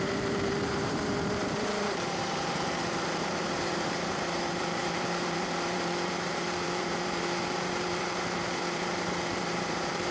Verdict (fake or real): fake